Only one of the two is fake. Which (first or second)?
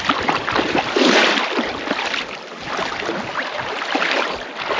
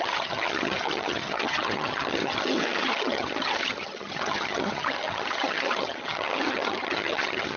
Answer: second